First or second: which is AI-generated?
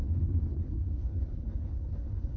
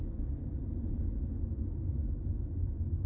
first